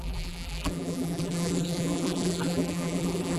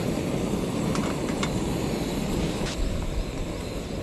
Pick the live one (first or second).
second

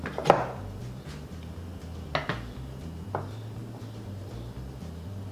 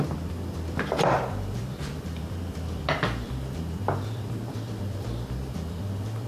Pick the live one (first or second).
first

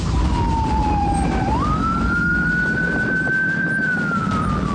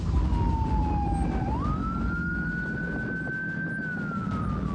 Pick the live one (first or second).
second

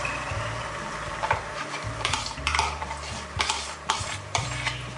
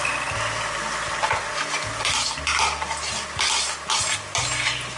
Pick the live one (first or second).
second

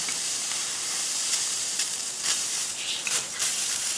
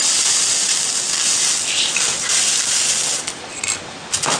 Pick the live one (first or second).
second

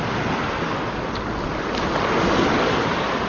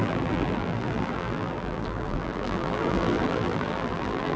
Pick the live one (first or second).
first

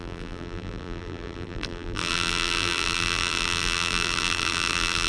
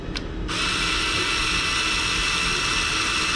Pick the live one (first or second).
second